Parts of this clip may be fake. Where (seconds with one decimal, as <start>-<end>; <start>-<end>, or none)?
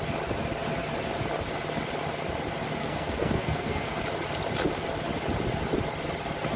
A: 2.8-4.0